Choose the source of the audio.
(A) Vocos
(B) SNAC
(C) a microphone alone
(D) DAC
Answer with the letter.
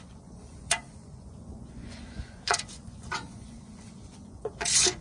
A